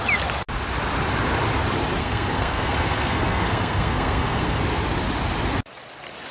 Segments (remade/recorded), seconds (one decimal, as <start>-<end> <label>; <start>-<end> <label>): 0.0-2.0 recorded; 2.0-4.6 remade; 4.6-6.3 recorded